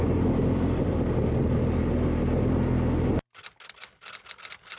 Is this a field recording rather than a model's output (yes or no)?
yes